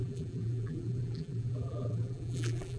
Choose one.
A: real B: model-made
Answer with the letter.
B